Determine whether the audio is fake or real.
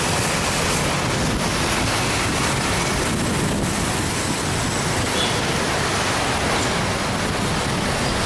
real